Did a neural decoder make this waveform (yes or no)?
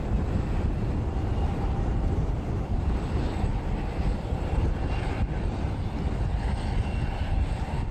no